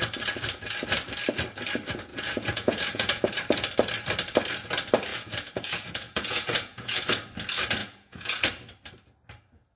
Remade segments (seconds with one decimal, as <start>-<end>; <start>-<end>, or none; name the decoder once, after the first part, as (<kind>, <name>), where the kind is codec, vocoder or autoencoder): 2.1-3.2 (vocoder, Vocos); 5.1-7.0; 7.8-8.4

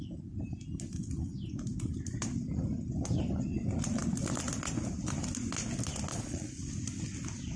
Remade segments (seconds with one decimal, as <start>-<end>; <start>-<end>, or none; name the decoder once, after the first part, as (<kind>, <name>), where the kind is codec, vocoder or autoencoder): 6.1-6.7 (vocoder, Vocos)

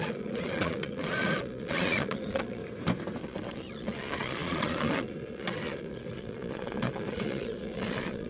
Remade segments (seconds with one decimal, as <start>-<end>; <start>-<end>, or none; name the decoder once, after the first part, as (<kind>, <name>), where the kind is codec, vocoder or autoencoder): 0.0-2.6 (vocoder, Vocos); 3.2-8.3

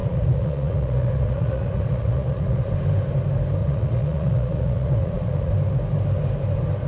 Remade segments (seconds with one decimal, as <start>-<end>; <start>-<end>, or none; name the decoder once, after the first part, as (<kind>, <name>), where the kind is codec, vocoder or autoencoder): 0.0-2.7 (vocoder, Vocos); 3.6-5.5

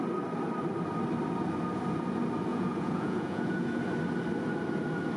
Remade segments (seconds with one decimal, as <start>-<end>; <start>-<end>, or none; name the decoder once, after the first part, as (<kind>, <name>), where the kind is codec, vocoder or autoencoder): 2.5-3.8 (vocoder, Vocos)

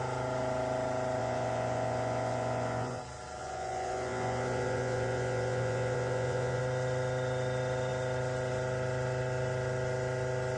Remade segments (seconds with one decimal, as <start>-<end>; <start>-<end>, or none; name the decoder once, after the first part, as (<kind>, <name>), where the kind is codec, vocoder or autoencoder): 1.2-3.0 (vocoder, Vocos); 3.4-6.6

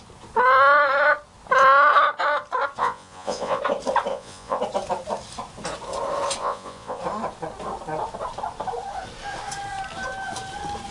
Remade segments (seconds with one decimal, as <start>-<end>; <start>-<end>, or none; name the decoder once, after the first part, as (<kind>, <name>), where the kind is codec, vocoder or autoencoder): 2.8-3.6 (vocoder, Vocos); 4.1-4.6; 6.4-7.0

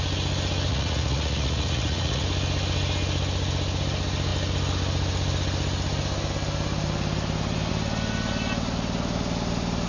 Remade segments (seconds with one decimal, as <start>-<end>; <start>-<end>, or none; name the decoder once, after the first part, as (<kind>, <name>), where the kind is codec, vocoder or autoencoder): 0.7-2.2 (vocoder, Vocos)